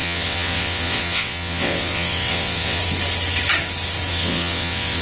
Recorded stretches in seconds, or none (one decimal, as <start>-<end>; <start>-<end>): 2.8-4.1